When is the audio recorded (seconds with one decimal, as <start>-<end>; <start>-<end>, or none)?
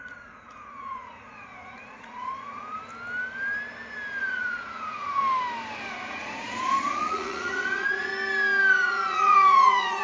2.8-4.2; 5.2-5.9; 8.1-8.7